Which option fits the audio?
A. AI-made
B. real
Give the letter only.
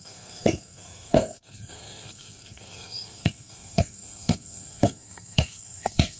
A